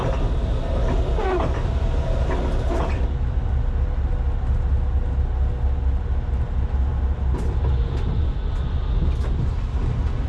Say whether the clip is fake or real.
real